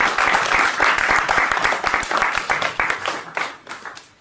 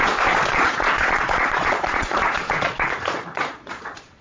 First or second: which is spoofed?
second